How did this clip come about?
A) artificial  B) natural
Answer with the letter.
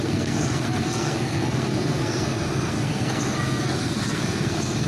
A